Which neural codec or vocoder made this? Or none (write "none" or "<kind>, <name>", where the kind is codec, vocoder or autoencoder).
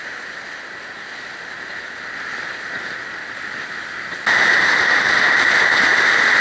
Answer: none